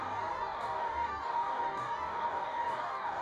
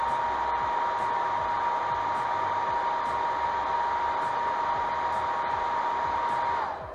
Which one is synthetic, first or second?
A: first